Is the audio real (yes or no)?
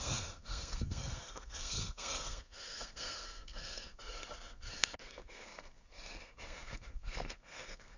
no